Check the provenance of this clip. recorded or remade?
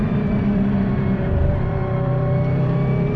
remade